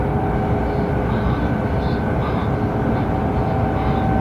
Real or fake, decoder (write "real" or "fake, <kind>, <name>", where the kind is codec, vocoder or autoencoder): fake, vocoder, BigVGAN v2